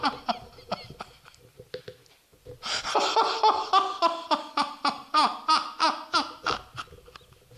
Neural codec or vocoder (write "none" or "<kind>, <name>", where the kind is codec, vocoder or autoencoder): none